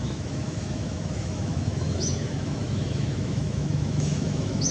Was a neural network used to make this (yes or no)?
yes